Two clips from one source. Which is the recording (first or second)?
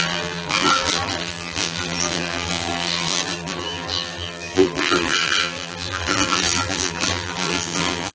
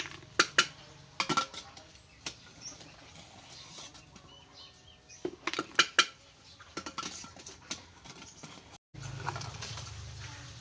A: second